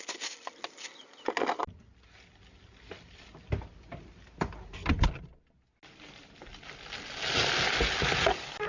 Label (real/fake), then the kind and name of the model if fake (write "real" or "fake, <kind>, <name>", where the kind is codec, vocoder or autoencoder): real